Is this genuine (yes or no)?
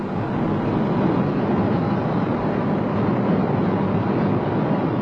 yes